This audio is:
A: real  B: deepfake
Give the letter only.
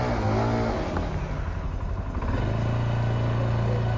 A